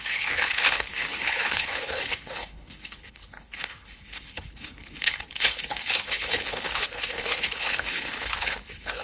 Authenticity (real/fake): fake